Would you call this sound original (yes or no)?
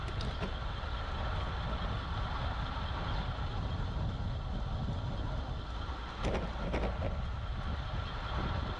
yes